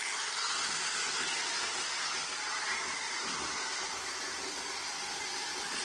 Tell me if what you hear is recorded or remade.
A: recorded